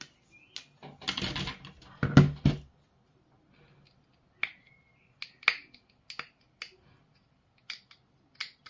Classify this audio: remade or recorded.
recorded